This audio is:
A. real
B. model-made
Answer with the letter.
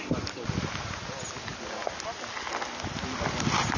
A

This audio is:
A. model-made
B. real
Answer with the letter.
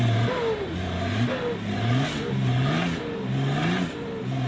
B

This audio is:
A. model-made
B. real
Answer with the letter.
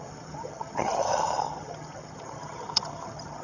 A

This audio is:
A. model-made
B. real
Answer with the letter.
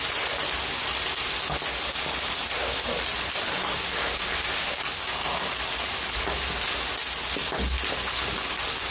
B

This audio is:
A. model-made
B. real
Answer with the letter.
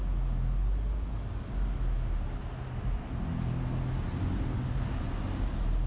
B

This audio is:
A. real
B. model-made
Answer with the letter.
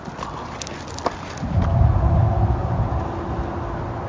A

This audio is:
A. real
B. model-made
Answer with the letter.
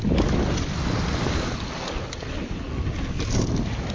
A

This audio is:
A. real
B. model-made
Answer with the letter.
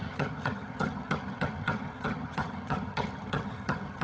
B